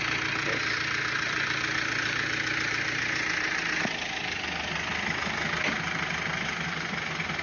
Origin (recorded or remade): recorded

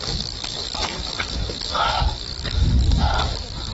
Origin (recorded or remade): remade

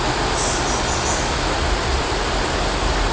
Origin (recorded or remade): recorded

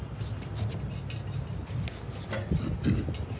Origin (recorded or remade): recorded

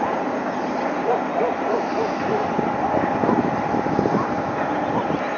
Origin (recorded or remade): recorded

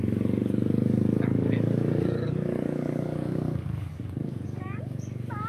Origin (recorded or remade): remade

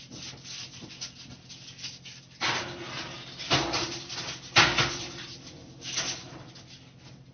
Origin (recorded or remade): recorded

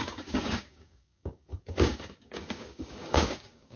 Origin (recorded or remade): remade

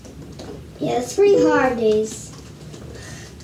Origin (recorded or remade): recorded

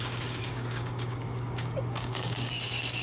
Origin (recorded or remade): remade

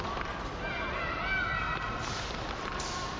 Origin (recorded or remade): recorded